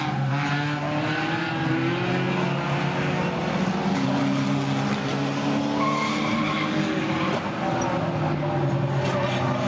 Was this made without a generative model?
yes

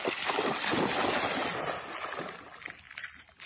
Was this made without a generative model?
yes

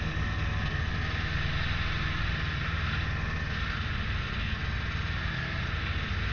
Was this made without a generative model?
yes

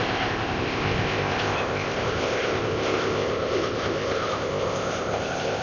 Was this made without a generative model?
no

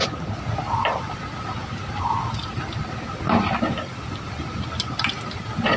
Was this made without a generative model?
yes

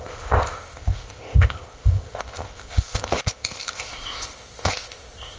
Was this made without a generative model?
no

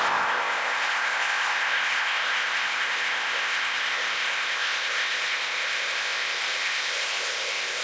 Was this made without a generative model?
no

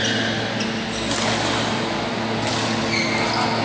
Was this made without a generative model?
yes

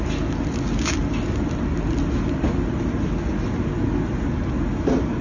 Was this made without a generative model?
yes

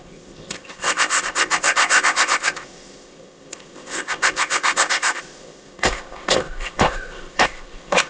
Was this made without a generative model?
no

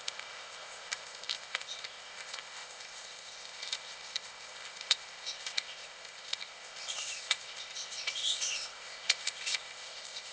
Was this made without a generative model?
no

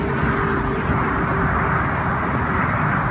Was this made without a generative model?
yes